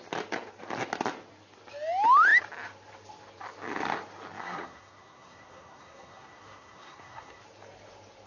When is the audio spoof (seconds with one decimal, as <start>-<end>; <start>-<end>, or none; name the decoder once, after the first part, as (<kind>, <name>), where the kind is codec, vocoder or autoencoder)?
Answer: 4.4-7.4 (codec, SNAC)